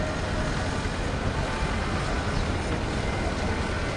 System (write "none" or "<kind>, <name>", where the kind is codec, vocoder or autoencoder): none